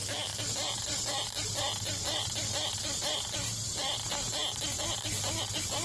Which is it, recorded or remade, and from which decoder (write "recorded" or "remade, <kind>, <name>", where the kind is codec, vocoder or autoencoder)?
recorded